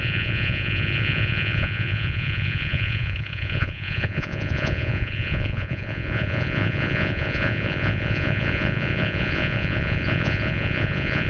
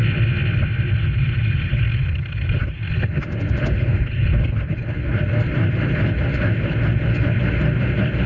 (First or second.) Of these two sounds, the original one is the second